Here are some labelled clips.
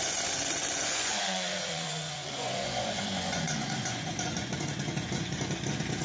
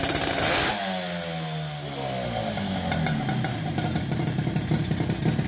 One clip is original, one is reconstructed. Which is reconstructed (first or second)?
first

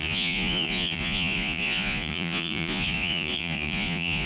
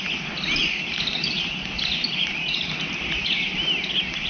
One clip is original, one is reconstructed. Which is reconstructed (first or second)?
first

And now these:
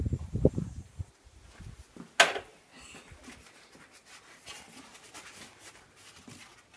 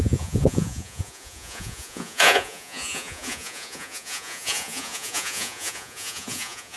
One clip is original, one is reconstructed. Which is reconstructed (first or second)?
second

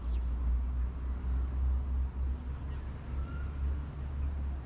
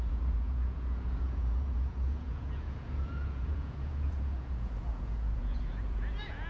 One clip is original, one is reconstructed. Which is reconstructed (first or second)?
second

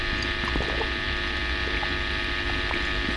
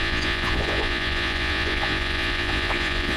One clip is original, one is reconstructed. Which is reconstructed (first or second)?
second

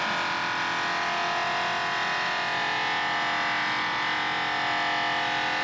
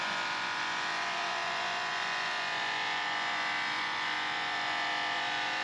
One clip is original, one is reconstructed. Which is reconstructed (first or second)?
second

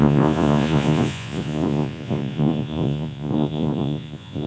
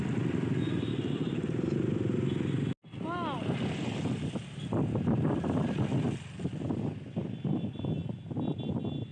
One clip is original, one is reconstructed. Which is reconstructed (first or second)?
first